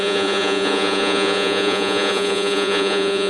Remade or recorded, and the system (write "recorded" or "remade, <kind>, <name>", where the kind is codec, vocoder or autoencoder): remade, vocoder, Vocos